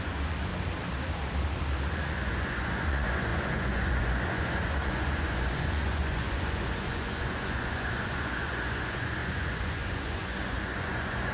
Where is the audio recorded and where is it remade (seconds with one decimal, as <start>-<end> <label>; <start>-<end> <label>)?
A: 0.0-0.5 remade; 0.5-1.9 recorded; 1.9-11.3 remade